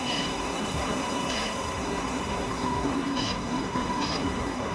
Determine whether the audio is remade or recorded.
remade